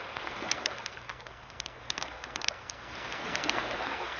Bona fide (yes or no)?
no